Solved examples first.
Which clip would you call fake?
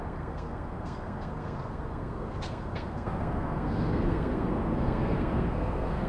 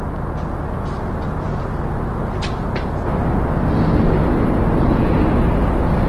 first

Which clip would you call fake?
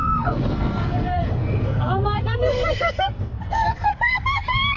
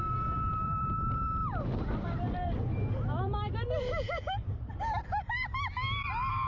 first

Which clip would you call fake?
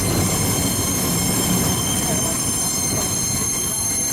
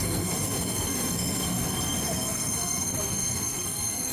second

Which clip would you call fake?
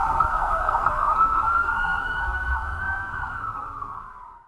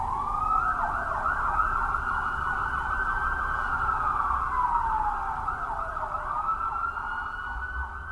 first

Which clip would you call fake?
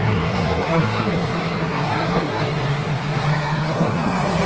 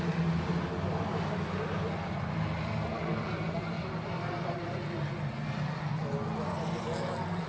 first